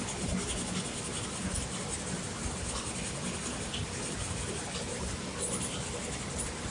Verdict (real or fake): real